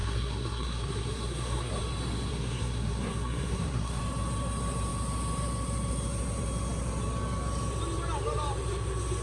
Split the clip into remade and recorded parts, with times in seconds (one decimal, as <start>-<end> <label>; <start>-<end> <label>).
0.0-1.8 remade; 1.8-2.3 recorded; 2.3-4.0 remade; 4.0-9.2 recorded